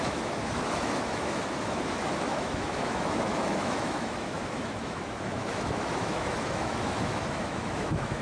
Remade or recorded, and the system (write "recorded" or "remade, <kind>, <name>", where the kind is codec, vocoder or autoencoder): remade, autoencoder, DAC-VAE